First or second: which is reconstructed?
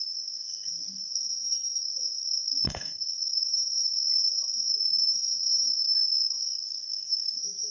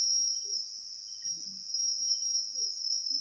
first